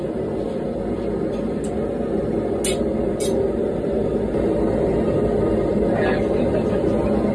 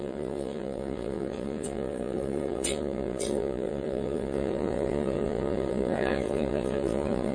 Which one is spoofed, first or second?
second